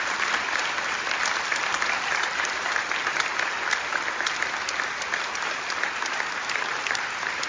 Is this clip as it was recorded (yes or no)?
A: yes